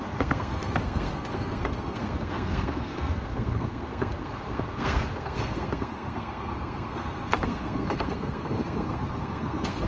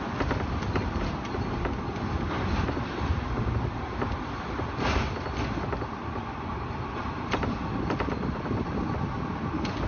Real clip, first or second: second